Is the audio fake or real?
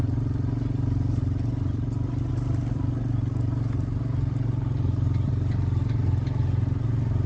real